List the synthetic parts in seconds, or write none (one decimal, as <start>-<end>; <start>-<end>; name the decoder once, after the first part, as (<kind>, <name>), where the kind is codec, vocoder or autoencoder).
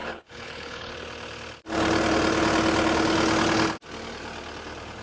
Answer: 0.0-0.9 (codec, HILCodec)